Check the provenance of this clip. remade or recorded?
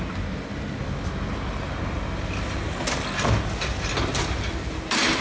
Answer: recorded